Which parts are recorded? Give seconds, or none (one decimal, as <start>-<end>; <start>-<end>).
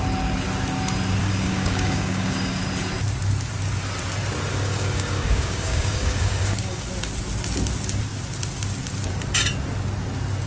0.0-1.2; 2.6-4.5; 6.9-10.5